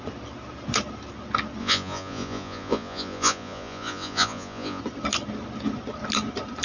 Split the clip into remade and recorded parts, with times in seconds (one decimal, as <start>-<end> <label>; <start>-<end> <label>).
0.0-1.6 recorded; 1.6-4.8 remade; 4.8-6.6 recorded